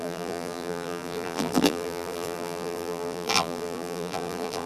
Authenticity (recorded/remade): remade